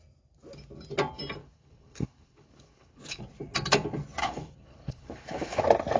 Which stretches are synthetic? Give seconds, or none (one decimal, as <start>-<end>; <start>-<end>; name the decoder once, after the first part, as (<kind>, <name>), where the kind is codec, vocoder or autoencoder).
1.4-3.2 (codec, HILCodec); 4.2-5.6